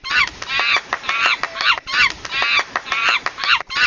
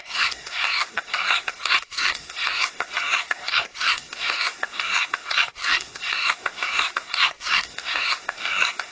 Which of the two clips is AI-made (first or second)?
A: second